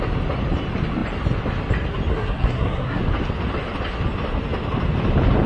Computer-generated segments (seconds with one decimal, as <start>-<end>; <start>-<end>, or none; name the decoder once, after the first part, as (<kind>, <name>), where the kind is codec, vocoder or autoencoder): 2.1-3.0 (codec, SNAC)